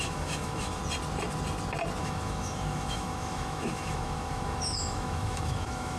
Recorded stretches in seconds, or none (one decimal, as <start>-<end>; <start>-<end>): 0.8-2.0